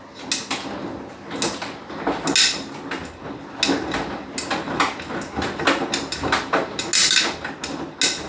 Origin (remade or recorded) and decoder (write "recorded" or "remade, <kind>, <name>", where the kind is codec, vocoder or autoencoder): recorded